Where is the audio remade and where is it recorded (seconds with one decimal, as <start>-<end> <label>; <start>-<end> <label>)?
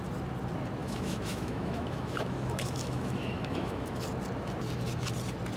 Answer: 0.0-0.8 recorded; 0.8-4.0 remade; 4.0-5.6 recorded